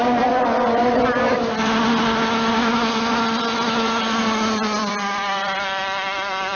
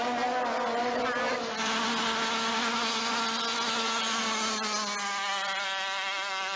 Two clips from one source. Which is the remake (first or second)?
first